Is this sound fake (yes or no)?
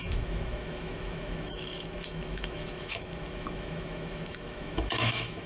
yes